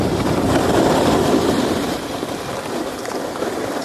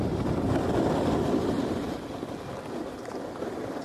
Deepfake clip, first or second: first